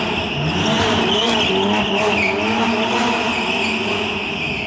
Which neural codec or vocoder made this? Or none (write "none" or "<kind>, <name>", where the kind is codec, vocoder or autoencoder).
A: none